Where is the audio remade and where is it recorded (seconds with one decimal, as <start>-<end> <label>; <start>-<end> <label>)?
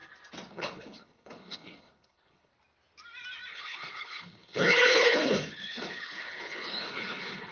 0.0-0.5 recorded; 0.5-2.5 remade; 2.5-3.5 recorded; 3.5-7.5 remade